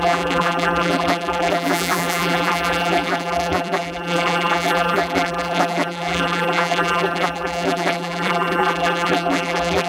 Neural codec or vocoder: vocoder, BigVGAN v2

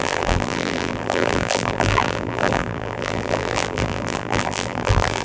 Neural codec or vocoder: vocoder, BigVGAN v2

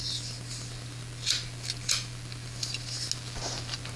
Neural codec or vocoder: none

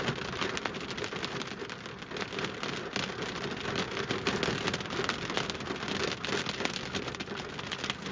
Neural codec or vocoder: none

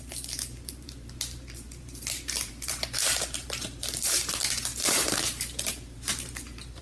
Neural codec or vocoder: vocoder, BigVGAN v2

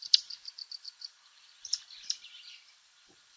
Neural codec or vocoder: vocoder, BigVGAN v2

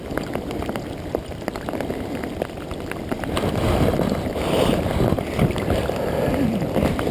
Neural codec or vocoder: none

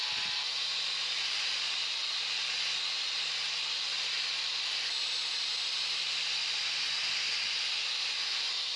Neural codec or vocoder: none